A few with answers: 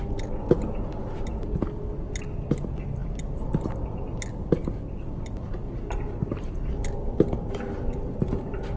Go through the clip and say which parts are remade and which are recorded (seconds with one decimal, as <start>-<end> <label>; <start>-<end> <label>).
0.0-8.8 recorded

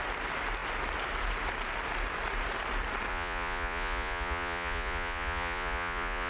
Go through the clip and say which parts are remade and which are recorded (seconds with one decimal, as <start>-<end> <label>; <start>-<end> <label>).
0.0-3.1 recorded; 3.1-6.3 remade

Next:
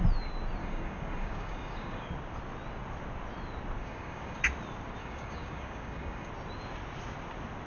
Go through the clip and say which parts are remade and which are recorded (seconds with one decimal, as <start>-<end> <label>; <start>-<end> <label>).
0.0-0.6 recorded; 0.6-2.1 remade; 2.1-3.8 recorded; 3.8-4.4 remade; 4.4-5.0 recorded; 5.0-6.3 remade; 6.3-7.7 recorded

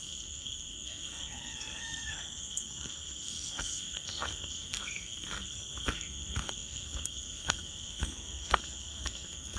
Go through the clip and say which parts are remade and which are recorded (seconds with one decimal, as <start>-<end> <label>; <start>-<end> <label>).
0.0-9.6 remade

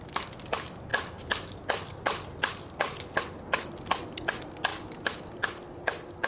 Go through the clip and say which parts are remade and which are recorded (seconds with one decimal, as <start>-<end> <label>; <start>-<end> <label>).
0.0-6.3 recorded